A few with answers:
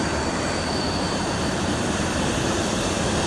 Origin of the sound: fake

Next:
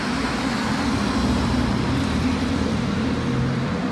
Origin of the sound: fake